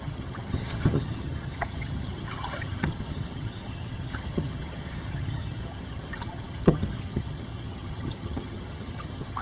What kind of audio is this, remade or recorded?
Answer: remade